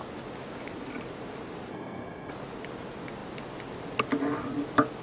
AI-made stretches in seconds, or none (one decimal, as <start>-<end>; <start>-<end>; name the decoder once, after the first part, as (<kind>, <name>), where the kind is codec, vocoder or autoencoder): 1.7-2.3 (codec, SNAC)

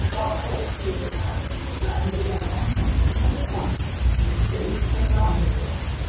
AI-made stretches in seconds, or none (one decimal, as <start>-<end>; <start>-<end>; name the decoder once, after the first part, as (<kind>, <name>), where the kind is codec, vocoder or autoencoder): none

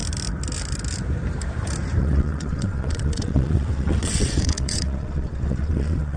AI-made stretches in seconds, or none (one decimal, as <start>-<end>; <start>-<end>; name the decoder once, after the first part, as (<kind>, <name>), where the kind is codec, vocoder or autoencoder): 2.0-6.2 (vocoder, WaveNeXt)